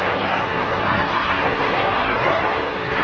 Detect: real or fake fake